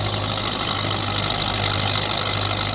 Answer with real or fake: real